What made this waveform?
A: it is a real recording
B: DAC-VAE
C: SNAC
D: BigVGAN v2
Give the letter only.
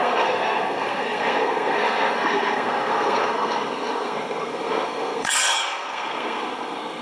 C